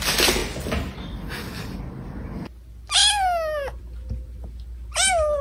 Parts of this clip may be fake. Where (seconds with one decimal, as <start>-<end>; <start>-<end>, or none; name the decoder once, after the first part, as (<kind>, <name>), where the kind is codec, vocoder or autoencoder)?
none